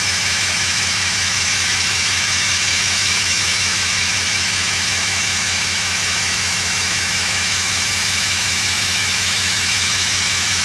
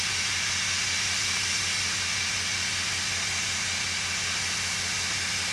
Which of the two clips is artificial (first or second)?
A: first